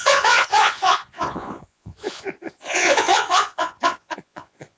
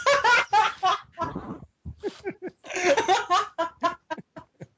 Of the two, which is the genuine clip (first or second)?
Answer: second